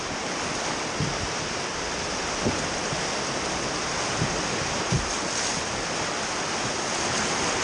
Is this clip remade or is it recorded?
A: recorded